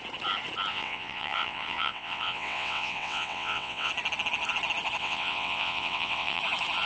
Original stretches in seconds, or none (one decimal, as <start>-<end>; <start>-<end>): 0.0-0.7; 3.9-5.0; 6.4-6.9